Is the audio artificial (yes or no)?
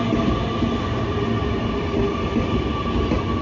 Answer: no